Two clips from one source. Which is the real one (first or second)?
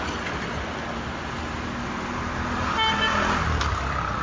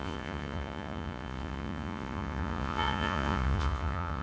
first